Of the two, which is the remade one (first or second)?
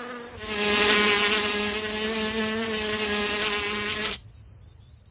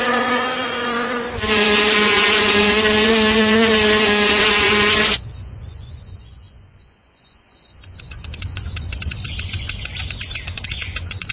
second